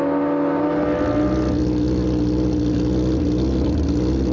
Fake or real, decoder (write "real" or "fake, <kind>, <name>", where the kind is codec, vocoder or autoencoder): real